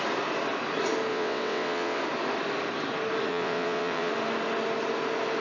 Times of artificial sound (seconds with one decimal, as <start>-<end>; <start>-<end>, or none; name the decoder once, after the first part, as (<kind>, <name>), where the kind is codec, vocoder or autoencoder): 1.1-2.0 (vocoder, WaveNeXt); 3.3-4.1